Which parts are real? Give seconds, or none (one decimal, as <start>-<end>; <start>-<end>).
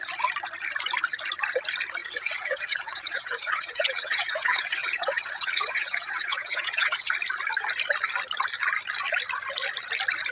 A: 0.0-2.0; 7.1-10.3